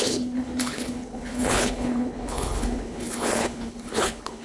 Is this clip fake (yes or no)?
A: yes